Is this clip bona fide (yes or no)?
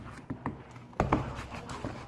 yes